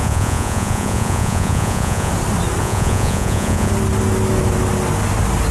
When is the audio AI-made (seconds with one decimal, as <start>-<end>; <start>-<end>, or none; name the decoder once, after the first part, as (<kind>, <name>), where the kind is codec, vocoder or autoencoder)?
0.0-2.1 (vocoder, Vocos); 2.6-3.7